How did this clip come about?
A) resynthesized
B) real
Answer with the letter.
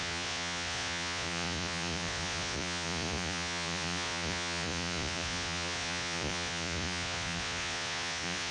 A